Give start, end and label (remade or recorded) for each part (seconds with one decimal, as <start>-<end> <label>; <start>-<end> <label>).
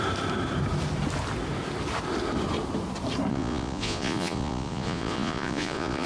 0.0-3.3 recorded; 3.3-6.1 remade